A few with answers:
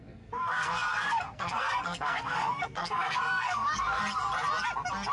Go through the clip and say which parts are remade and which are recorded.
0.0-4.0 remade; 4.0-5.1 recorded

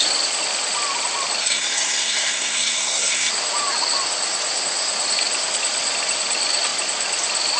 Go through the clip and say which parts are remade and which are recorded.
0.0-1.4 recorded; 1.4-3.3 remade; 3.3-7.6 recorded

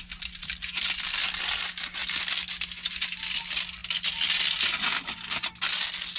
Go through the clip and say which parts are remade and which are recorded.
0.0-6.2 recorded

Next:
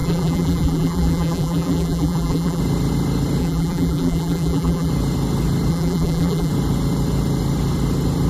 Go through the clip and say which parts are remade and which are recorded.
0.0-2.6 remade; 2.6-3.4 recorded; 3.4-4.9 remade; 4.9-5.7 recorded; 5.7-6.5 remade; 6.5-8.3 recorded